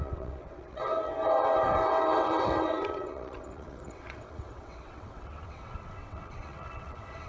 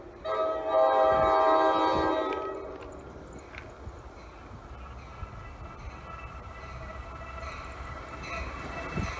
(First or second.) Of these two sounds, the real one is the second